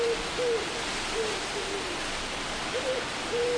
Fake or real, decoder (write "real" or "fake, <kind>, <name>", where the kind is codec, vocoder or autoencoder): real